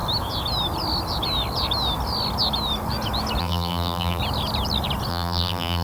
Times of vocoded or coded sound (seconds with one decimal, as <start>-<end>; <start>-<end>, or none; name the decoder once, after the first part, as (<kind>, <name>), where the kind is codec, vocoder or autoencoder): 3.4-4.2 (vocoder, BigVGAN v2); 5.1-5.8